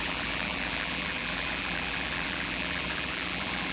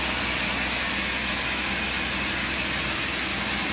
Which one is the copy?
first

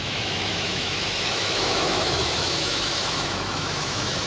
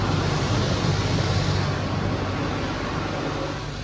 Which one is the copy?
first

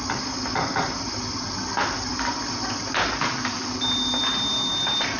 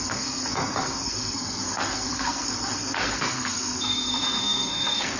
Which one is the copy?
second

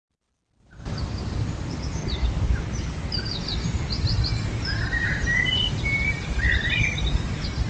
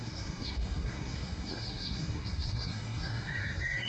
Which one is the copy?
second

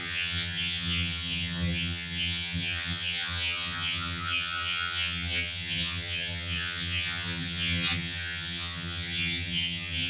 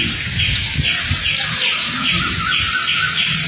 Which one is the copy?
first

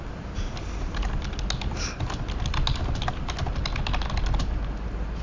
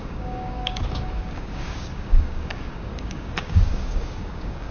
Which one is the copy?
second